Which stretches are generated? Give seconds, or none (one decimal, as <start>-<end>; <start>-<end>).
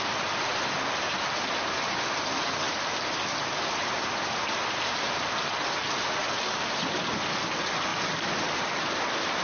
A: 6.2-7.0; 7.9-8.9